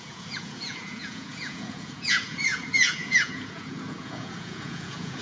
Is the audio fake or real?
fake